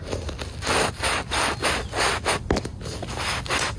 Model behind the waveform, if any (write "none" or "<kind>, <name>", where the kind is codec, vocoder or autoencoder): none